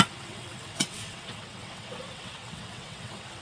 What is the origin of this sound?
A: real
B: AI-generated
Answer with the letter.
B